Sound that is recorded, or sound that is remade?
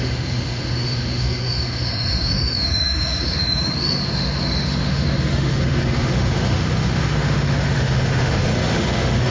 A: remade